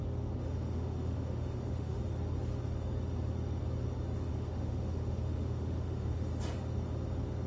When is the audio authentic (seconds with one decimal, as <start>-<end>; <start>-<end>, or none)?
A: 0.0-0.4; 2.0-4.3; 6.3-7.5